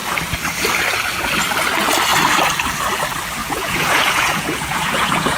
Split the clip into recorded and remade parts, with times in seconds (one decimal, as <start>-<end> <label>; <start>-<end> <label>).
0.0-3.4 recorded; 3.4-5.4 remade